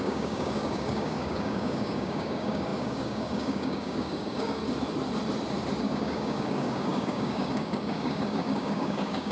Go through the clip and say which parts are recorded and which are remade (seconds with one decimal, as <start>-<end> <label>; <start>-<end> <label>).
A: 0.0-4.6 remade; 4.6-5.8 recorded; 5.8-9.3 remade